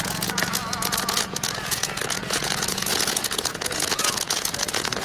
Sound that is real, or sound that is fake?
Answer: fake